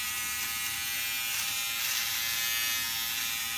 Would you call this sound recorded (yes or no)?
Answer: yes